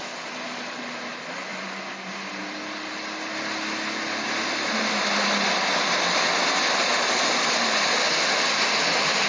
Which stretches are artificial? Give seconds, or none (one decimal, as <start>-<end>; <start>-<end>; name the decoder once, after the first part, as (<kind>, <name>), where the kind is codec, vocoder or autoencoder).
none